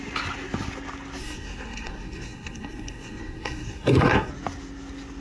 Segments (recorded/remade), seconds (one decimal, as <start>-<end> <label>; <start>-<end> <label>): 0.0-1.2 recorded; 1.2-4.3 remade; 4.3-5.2 recorded